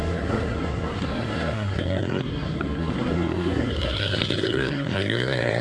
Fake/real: fake